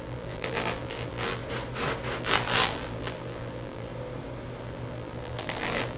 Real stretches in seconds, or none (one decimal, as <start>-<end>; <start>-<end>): 1.4-2.2; 3.9-4.6